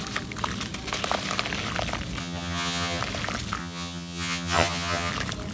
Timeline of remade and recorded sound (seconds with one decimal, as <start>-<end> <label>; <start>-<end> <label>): 0.0-2.2 recorded; 2.2-3.0 remade; 3.0-3.6 recorded; 3.6-5.1 remade; 5.1-5.5 recorded